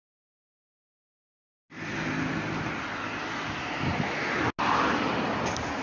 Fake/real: real